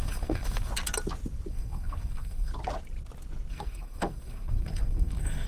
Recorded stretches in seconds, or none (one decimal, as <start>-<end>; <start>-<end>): 0.7-1.5; 2.5-3.5